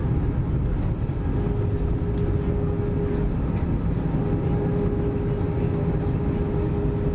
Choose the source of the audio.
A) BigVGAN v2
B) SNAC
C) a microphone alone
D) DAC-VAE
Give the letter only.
C